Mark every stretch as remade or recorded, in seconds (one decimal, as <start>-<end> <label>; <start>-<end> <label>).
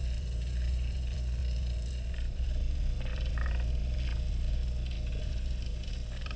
0.0-1.4 remade; 1.4-5.2 recorded; 5.2-6.4 remade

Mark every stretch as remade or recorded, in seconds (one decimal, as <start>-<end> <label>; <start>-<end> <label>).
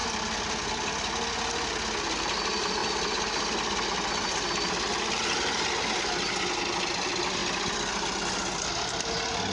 0.0-9.5 recorded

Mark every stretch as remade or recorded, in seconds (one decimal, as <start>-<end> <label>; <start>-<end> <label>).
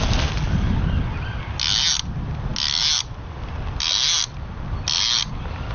0.0-5.7 recorded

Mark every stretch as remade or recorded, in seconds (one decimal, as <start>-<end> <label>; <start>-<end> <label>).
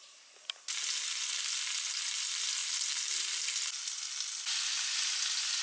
0.0-5.6 recorded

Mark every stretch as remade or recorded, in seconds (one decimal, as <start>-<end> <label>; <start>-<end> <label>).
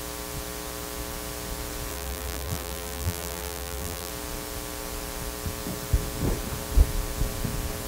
0.0-1.9 recorded; 1.9-4.1 remade; 4.1-7.9 recorded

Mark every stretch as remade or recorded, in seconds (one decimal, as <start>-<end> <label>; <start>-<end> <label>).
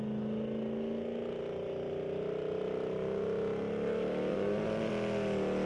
0.0-4.3 recorded; 4.3-4.9 remade; 4.9-5.7 recorded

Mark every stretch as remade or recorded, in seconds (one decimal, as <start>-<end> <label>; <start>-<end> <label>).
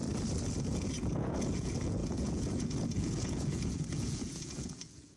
0.0-0.6 recorded; 0.6-5.2 remade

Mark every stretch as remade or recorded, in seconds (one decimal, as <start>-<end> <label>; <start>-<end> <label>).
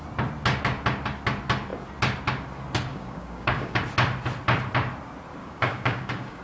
0.0-2.9 recorded; 2.9-3.8 remade; 3.8-5.4 recorded; 5.4-6.4 remade